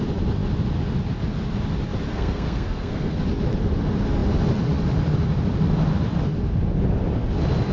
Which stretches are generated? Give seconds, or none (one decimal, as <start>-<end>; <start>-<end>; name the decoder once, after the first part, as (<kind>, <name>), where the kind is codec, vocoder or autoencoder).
2.1-3.2 (codec, SNAC)